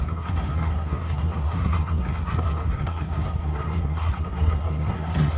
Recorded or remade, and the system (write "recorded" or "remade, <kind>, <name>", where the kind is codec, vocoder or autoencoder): remade, codec, SNAC